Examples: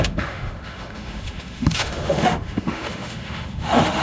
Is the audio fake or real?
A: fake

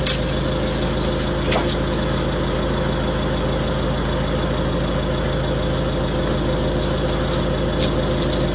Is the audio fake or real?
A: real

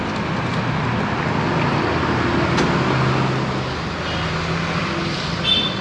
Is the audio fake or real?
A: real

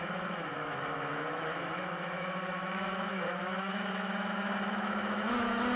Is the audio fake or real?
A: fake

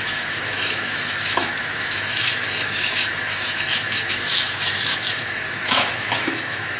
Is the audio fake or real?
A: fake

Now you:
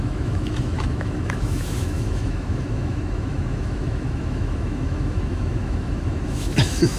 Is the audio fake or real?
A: fake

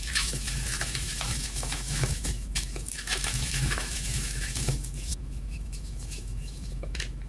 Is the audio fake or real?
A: fake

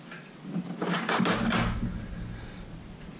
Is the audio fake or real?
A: real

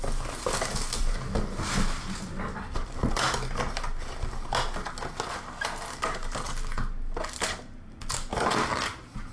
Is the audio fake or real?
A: real